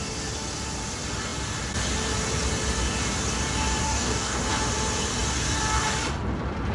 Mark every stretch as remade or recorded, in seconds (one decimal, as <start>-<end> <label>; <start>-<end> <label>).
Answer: 0.0-3.8 recorded; 3.8-4.4 remade; 4.4-6.7 recorded

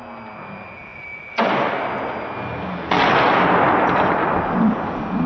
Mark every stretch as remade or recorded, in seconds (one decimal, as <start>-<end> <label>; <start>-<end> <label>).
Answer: 0.0-5.3 recorded

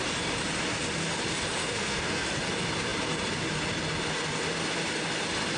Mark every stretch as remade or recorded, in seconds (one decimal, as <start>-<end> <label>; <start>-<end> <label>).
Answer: 0.0-1.6 recorded; 1.6-2.4 remade; 2.4-5.6 recorded

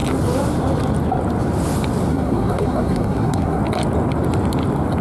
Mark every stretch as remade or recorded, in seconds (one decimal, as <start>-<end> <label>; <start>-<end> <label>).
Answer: 0.0-2.1 recorded; 2.1-3.6 remade; 3.6-5.0 recorded

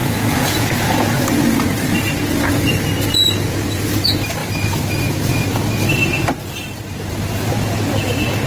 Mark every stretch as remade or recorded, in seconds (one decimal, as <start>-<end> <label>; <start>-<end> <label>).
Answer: 0.0-1.2 remade; 1.2-8.5 recorded

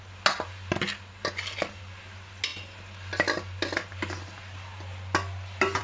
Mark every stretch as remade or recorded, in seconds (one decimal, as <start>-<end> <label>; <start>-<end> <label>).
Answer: 0.0-5.8 recorded

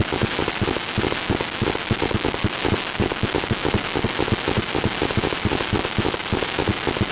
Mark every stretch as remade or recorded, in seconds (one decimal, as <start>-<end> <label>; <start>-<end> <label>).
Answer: 0.0-7.1 recorded